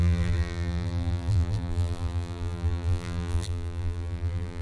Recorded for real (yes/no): no